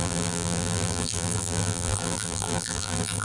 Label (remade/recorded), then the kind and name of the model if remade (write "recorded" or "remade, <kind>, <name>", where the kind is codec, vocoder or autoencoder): remade, vocoder, BigVGAN v2